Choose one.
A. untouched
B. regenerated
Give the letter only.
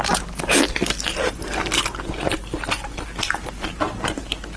A